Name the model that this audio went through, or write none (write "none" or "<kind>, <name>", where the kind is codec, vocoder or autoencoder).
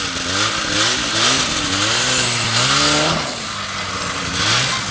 none